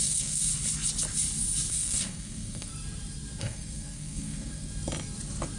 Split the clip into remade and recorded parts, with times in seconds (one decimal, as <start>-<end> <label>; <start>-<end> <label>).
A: 0.0-0.5 remade; 0.5-1.7 recorded; 1.7-2.7 remade; 2.7-3.4 recorded; 3.4-4.7 remade; 4.7-5.6 recorded

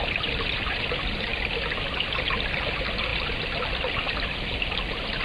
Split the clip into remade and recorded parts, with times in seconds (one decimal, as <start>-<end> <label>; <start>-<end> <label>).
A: 0.0-5.2 recorded

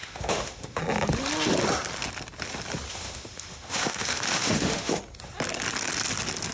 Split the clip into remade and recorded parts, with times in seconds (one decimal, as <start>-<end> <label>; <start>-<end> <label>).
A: 0.0-0.8 remade; 0.8-2.9 recorded; 2.9-5.0 remade; 5.0-6.5 recorded

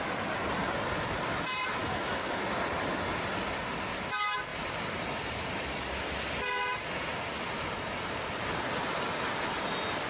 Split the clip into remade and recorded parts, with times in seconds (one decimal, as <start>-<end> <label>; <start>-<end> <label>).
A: 0.0-1.8 recorded; 1.8-2.4 remade; 2.4-10.1 recorded

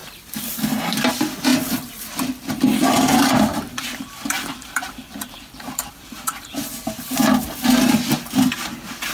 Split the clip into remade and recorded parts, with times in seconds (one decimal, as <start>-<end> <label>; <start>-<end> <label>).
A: 0.0-1.5 recorded; 1.5-5.9 remade; 5.9-9.1 recorded